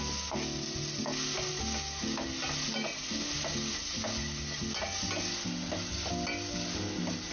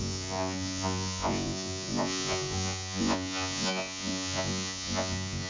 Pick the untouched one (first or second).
first